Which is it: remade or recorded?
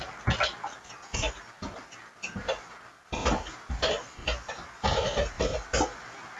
recorded